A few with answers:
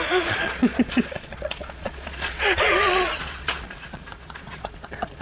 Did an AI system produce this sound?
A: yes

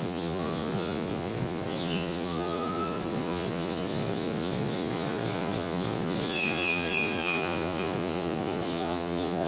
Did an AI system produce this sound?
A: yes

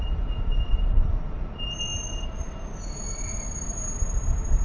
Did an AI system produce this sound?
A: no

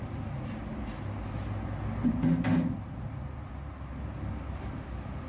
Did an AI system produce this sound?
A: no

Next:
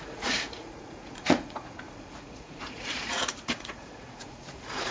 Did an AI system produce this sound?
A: yes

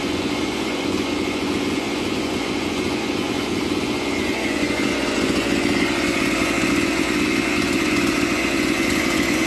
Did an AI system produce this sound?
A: yes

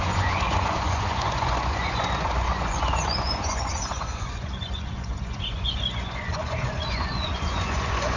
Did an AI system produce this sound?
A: yes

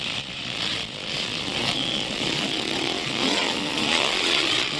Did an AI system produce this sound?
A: yes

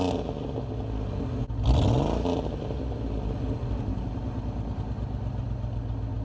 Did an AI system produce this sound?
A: no